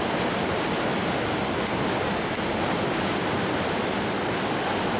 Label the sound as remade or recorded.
recorded